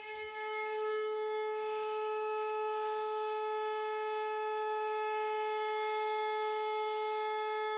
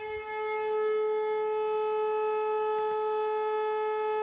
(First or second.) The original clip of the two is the second